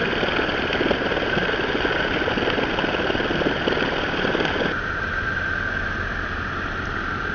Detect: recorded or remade recorded